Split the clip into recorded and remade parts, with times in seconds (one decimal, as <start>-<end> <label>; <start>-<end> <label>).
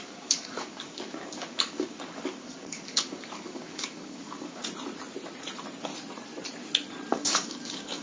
0.0-4.6 remade; 4.6-7.1 recorded; 7.1-8.0 remade